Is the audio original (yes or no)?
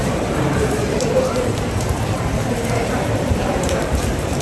no